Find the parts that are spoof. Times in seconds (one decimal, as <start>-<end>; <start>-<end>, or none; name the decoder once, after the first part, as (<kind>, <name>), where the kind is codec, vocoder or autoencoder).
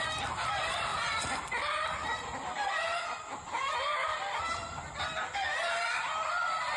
0.0-0.9 (vocoder, BigVGAN v2); 2.2-6.8